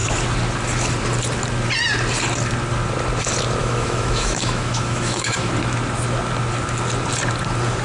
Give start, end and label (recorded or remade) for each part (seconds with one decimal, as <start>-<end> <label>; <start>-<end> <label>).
0.0-3.6 recorded; 3.6-5.5 remade; 5.5-7.8 recorded